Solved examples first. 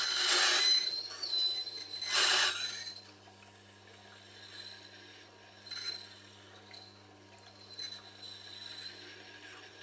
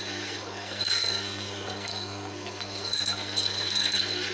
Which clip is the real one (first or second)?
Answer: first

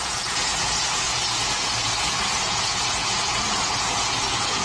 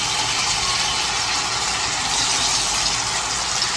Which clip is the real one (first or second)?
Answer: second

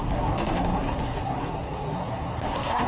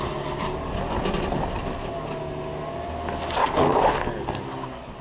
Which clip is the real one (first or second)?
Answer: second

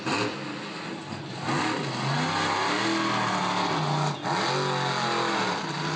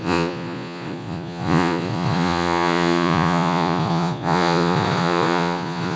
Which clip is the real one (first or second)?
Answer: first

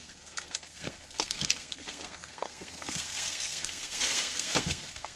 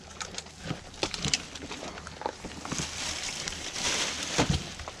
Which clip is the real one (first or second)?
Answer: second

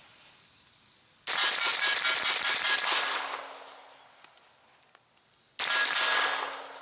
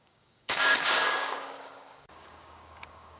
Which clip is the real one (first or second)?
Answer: first